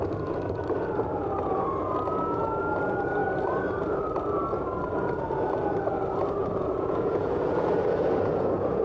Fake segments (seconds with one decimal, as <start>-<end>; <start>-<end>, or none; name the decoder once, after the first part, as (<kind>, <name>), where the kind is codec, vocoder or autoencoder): 6.4-8.8 (vocoder, Vocos)